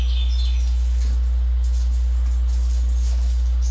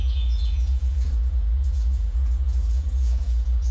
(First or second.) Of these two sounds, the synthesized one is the second